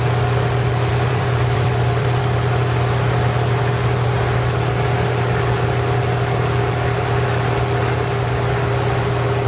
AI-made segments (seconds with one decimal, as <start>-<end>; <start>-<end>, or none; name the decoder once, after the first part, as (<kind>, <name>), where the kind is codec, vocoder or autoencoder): 0.9-2.2 (vocoder, BigVGAN v2)